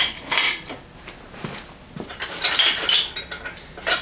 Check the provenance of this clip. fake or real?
real